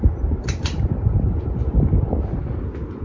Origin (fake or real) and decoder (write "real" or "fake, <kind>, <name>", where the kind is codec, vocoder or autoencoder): real